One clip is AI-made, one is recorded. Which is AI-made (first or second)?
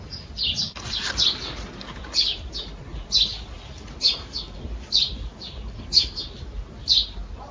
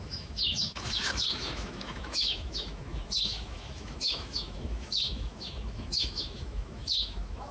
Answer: second